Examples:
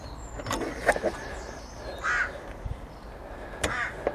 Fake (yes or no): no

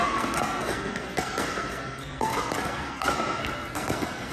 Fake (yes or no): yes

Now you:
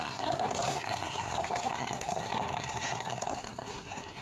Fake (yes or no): yes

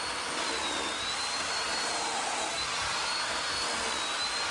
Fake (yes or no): no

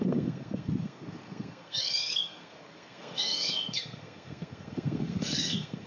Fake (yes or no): yes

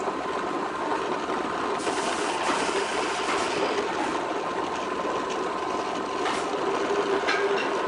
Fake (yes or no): no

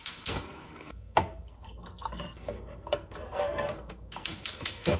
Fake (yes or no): yes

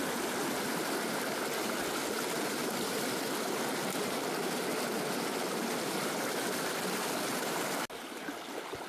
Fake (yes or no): no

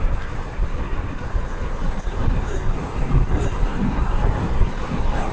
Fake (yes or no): yes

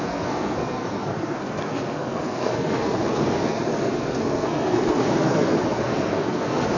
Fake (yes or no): yes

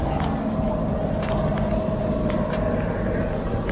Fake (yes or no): no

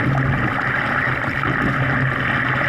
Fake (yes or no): no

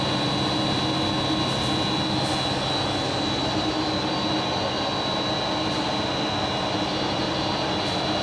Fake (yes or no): no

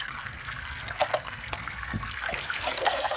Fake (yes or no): yes